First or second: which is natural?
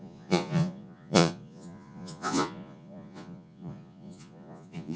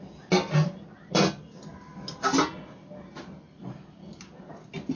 second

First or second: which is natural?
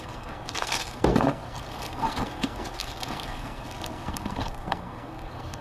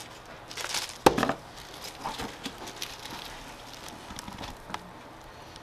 second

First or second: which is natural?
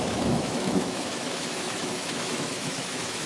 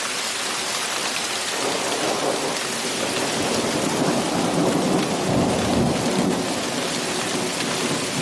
second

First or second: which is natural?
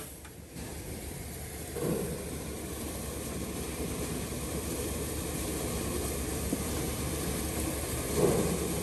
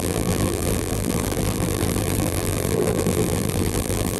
first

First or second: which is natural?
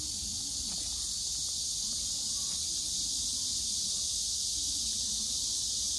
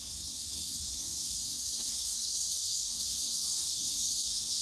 first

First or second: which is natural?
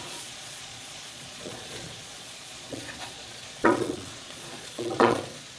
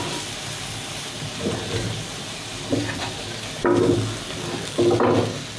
second